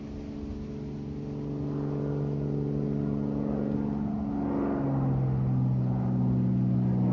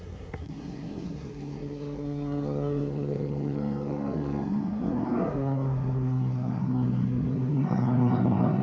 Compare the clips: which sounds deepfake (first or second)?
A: second